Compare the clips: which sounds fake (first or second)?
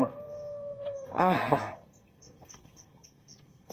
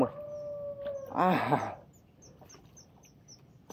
first